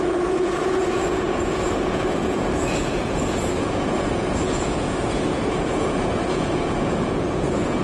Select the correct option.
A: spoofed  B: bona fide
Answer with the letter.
A